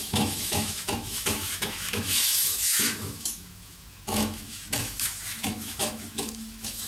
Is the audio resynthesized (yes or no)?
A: yes